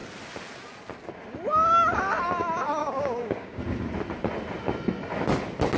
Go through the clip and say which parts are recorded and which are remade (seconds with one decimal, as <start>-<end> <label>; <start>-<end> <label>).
0.0-2.8 recorded; 2.8-3.6 remade; 3.6-5.8 recorded